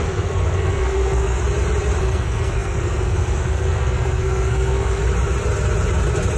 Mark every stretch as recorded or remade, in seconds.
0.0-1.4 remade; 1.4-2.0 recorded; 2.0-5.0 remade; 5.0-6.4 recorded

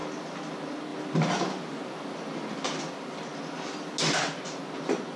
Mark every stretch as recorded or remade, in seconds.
0.0-5.2 recorded